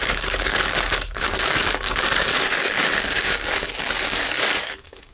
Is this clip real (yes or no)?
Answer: no